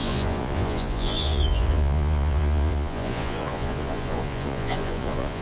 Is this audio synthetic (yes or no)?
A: yes